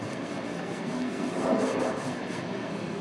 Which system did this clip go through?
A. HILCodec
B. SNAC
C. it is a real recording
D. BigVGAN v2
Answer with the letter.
B